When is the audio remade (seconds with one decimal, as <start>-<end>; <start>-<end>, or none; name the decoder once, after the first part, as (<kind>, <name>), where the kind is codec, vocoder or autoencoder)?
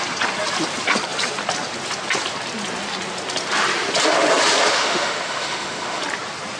4.7-6.0 (autoencoder, DAC-VAE)